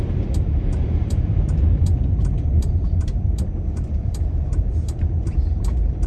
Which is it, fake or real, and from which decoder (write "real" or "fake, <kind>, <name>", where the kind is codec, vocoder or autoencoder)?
fake, vocoder, BigVGAN v2